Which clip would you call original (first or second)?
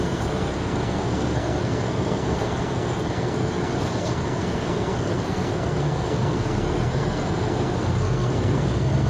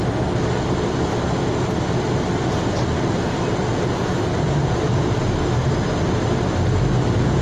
second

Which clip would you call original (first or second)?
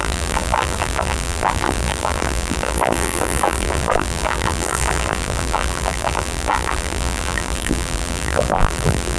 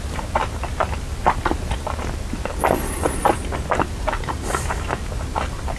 second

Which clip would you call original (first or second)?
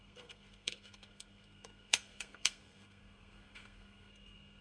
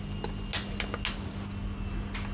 second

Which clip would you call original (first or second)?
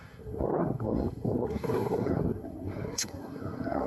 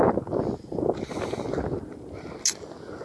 second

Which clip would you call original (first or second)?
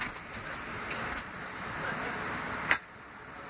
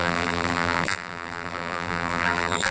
first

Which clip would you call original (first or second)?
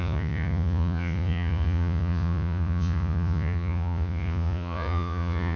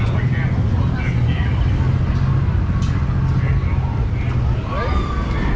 second